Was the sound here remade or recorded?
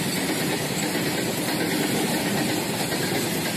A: remade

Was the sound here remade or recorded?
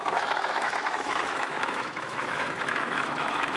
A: remade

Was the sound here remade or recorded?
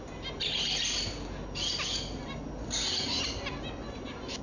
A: recorded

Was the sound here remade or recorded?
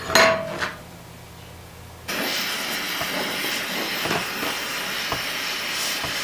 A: recorded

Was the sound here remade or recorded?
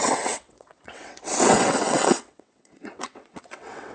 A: remade